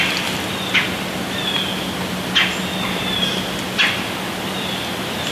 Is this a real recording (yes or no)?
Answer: yes